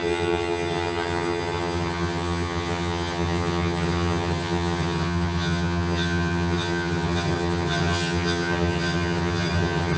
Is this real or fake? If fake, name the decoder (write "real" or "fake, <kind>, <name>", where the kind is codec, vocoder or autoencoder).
fake, vocoder, HiFi-GAN